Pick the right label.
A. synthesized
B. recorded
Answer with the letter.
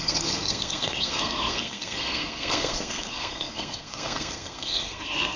A